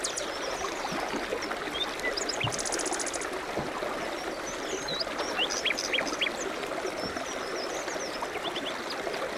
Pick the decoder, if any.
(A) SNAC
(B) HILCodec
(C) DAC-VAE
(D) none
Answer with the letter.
D